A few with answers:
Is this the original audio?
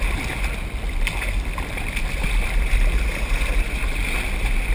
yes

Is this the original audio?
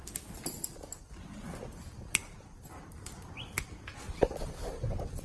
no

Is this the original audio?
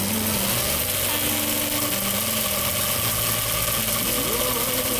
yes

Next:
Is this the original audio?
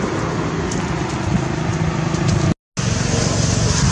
yes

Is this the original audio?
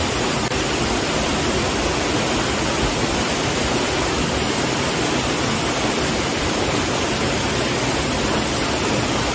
no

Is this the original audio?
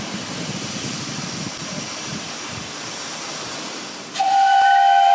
yes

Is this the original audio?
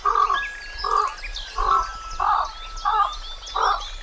yes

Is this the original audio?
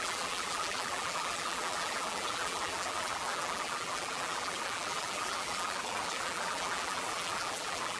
no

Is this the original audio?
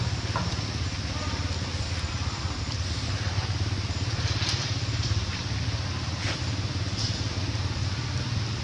no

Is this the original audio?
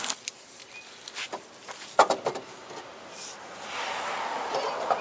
yes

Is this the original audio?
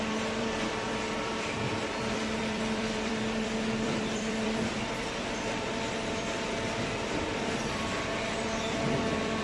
no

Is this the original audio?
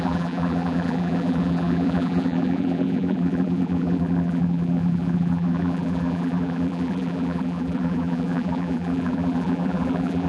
no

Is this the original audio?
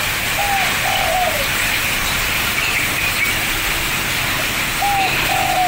yes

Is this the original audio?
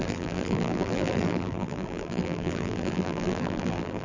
no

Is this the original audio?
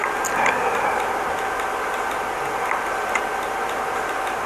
yes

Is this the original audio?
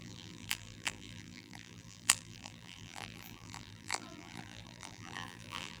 no